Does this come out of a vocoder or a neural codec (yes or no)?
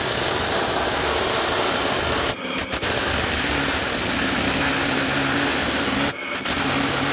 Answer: no